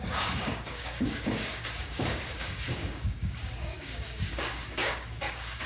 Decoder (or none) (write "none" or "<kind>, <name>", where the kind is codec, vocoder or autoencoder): codec, DAC